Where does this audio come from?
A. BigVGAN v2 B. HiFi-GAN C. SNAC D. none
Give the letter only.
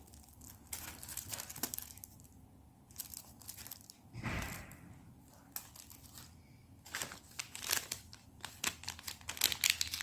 D